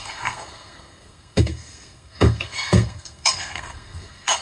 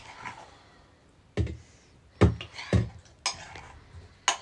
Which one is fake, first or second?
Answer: first